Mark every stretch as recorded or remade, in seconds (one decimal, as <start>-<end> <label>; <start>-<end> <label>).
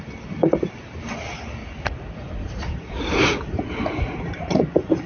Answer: 0.0-1.6 recorded; 1.6-5.1 remade